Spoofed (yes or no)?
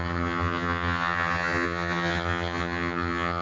yes